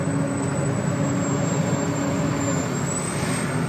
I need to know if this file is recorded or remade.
recorded